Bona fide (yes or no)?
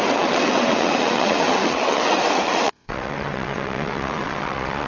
no